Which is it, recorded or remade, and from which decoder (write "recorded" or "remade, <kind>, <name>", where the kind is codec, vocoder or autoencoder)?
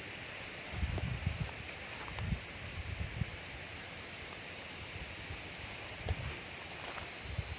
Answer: recorded